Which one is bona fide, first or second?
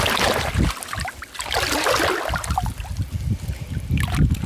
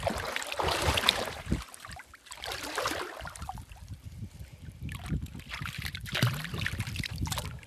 first